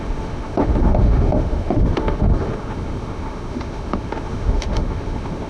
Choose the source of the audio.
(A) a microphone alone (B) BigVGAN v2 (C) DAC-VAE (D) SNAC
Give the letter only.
C